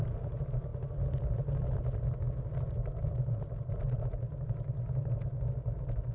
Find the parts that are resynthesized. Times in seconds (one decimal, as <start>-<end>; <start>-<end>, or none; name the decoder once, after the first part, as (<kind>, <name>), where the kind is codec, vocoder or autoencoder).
none